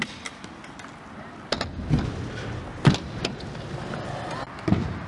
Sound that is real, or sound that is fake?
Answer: real